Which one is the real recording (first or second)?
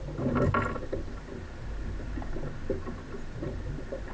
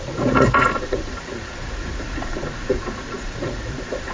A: first